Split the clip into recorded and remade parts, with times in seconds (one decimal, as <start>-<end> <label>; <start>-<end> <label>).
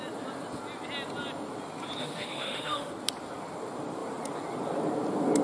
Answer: 0.0-2.0 recorded; 2.0-2.9 remade; 2.9-5.4 recorded